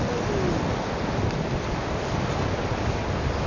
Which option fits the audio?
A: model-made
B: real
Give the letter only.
B